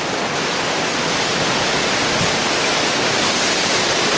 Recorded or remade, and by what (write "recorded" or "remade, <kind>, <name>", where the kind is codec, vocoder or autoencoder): recorded